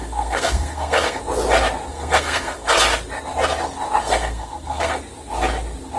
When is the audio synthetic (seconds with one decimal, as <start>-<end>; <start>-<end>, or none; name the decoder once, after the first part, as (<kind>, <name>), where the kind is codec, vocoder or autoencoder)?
0.0-1.2 (codec, SNAC); 1.9-2.8; 4.0-5.0